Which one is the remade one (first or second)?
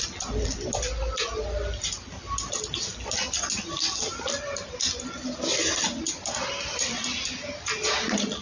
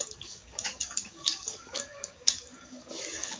second